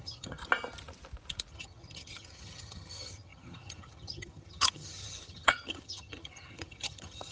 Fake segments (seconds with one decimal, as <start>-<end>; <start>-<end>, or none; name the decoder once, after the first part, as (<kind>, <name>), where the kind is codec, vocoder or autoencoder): 0.0-0.4 (vocoder, HiFi-GAN); 1.5-7.3